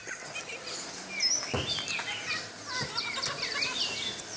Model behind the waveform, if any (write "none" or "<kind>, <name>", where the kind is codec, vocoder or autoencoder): none